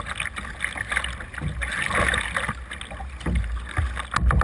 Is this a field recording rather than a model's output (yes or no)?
yes